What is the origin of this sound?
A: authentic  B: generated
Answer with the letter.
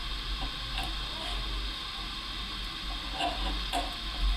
A